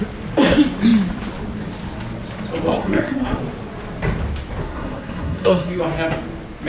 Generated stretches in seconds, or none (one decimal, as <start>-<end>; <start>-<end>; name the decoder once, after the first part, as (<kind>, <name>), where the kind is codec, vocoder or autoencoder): 2.7-3.4 (codec, SNAC); 4.6-5.8